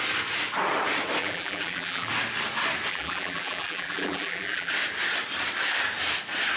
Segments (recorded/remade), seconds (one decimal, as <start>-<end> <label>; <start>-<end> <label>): 0.0-1.2 recorded; 1.2-2.1 remade; 2.1-2.9 recorded; 2.9-4.7 remade; 4.7-6.6 recorded